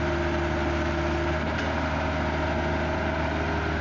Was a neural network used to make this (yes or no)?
no